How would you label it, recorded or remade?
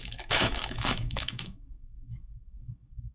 remade